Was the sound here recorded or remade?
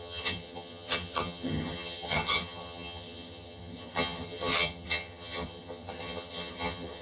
remade